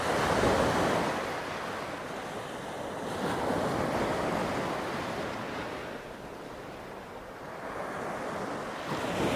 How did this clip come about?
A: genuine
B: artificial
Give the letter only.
A